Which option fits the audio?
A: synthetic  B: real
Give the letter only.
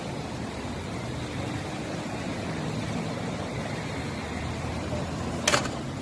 B